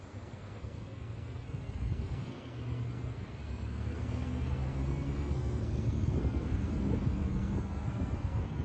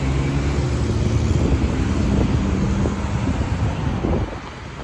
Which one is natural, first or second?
second